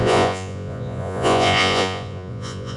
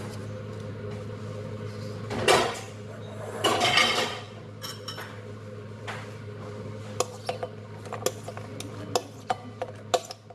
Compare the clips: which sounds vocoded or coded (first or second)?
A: first